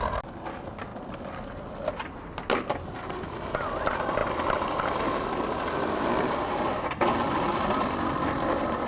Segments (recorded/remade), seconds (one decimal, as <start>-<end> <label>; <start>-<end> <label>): 0.0-8.9 recorded